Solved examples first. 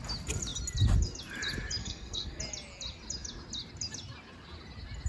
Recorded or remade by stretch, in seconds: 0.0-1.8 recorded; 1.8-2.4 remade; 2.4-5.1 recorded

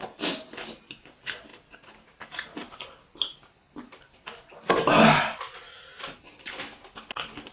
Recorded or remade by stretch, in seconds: 0.0-7.5 recorded

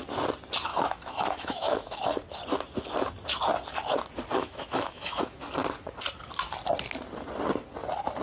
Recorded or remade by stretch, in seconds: 0.0-0.7 recorded; 0.7-2.0 remade; 2.0-4.4 recorded; 4.4-5.4 remade; 5.4-8.2 recorded

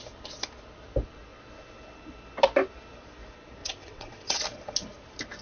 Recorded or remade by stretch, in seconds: 0.0-3.6 recorded; 3.6-4.4 remade; 4.4-5.4 recorded

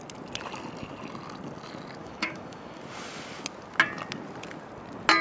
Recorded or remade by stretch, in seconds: 0.0-2.0 recorded; 2.0-2.8 remade; 2.8-5.2 recorded

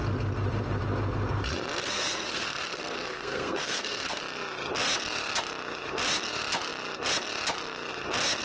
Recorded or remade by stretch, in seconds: 0.0-1.8 recorded; 1.8-4.2 remade; 4.2-8.4 recorded

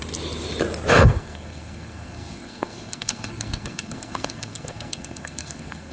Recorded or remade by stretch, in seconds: 0.0-1.0 recorded; 1.0-5.9 remade